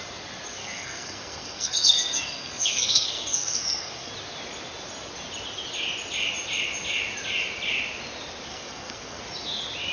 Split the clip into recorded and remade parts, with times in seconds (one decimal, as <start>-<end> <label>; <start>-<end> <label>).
0.0-0.6 recorded; 0.6-4.1 remade; 4.1-8.5 recorded; 8.5-9.2 remade; 9.2-9.9 recorded